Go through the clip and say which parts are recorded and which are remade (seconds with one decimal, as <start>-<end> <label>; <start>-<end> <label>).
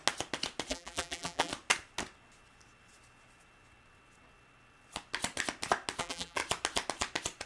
0.0-0.7 recorded; 0.7-1.5 remade; 1.5-6.0 recorded; 6.0-6.4 remade; 6.4-7.5 recorded